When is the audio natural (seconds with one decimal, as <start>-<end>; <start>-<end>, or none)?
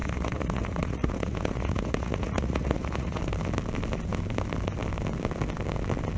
3.2-6.2